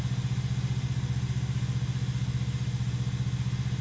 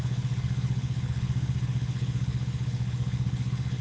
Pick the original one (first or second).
first